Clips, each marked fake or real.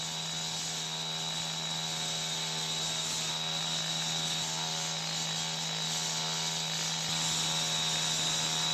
real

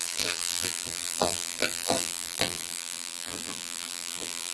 fake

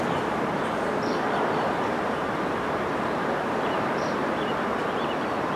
fake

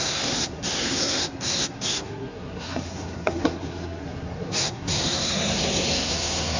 fake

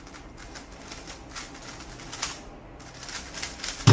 real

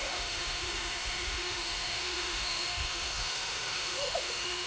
fake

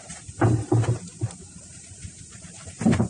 fake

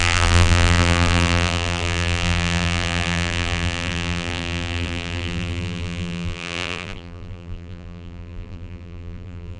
fake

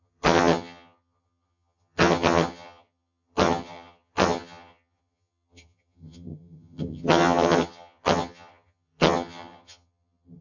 fake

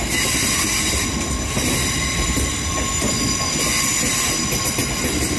real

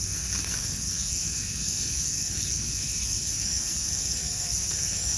fake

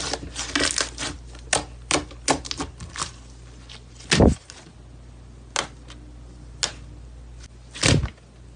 real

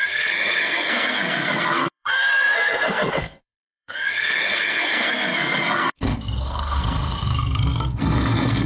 fake